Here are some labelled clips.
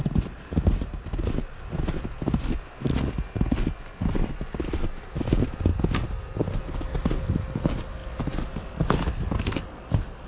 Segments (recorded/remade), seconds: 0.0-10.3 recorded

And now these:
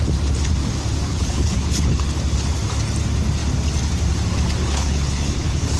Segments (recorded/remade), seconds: 0.0-1.1 recorded; 1.1-2.0 remade; 2.0-4.6 recorded; 4.6-5.8 remade

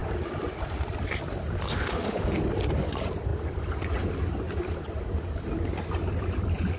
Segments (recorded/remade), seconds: 0.0-1.7 recorded; 1.7-2.4 remade; 2.4-6.8 recorded

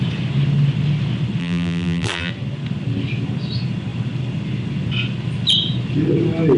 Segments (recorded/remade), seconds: 0.0-1.4 recorded; 1.4-2.3 remade; 2.3-6.6 recorded